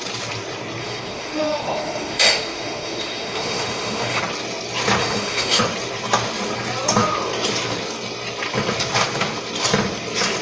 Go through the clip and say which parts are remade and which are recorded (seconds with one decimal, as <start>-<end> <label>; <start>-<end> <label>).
0.0-0.8 recorded; 0.8-4.2 remade; 4.2-5.0 recorded; 5.0-5.6 remade; 5.6-10.4 recorded